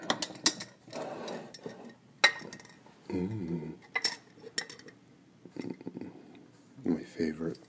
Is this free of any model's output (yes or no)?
yes